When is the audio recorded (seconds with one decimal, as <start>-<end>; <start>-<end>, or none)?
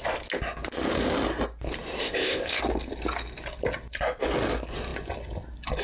0.0-2.0; 2.6-5.8